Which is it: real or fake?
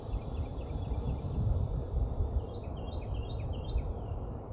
fake